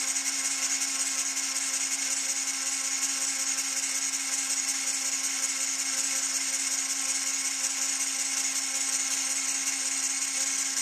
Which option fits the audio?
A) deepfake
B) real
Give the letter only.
B